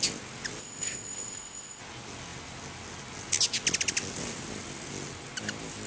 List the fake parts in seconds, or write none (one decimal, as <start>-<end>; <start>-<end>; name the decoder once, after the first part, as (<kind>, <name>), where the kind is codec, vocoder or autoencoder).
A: 0.6-1.8 (codec, ZipCodec)